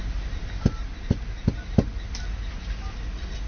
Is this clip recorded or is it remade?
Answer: recorded